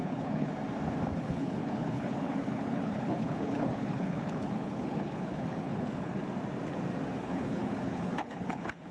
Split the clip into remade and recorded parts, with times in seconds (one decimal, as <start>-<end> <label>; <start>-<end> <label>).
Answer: 0.0-0.5 remade; 0.5-1.2 recorded; 1.2-6.2 remade; 6.2-7.2 recorded; 7.2-8.9 remade